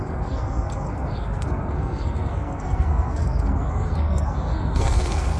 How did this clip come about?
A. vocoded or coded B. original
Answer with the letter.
A